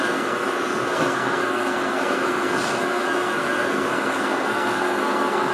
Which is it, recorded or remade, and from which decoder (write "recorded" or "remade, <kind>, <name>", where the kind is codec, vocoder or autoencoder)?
remade, codec, SNAC